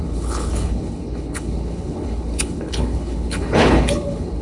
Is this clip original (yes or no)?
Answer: no